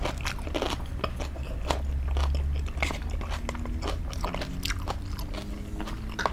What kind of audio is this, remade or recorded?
recorded